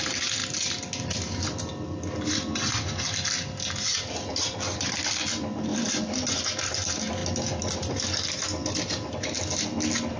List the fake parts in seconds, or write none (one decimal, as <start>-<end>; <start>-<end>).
none